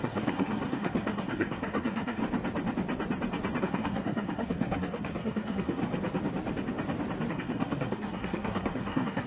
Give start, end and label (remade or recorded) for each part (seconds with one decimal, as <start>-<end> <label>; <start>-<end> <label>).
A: 0.0-2.2 remade; 2.2-3.6 recorded; 3.6-5.8 remade; 5.8-7.3 recorded; 7.3-9.3 remade